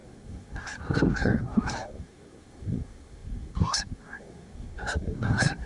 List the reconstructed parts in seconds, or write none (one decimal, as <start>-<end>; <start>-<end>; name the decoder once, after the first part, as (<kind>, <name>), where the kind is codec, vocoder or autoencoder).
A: 0.0-5.7 (codec, SNAC)